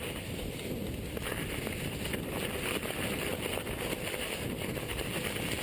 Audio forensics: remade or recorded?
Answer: recorded